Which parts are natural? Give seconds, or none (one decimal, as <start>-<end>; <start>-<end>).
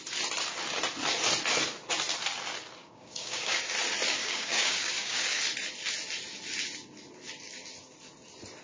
0.0-2.8; 3.6-4.2; 5.4-8.6